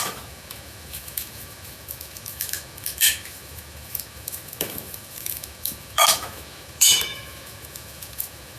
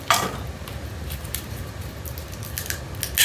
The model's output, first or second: first